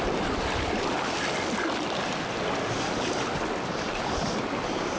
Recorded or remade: recorded